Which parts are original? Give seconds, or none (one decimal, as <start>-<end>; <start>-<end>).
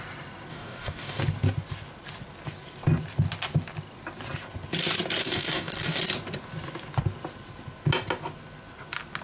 0.0-0.5; 1.2-5.2; 6.0-9.2